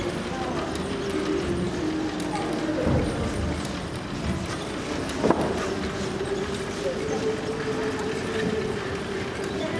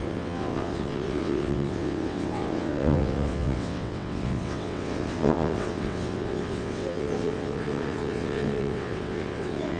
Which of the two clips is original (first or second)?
first